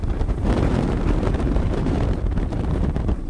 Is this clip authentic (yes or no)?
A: no